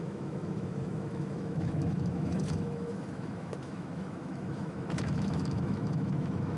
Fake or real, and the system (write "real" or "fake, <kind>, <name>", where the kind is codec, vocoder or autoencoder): fake, autoencoder, DAC-VAE